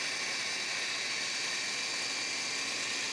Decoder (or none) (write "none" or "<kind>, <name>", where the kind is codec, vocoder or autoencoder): none